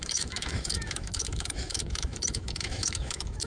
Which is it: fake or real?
fake